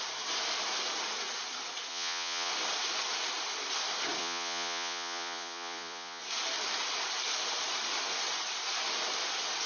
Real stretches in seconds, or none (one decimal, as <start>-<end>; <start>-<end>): 0.0-1.9; 2.5-4.2; 6.2-9.7